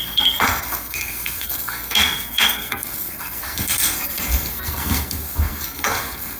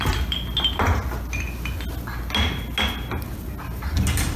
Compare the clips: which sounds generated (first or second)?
first